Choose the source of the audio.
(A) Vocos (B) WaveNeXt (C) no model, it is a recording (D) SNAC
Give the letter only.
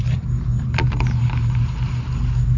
C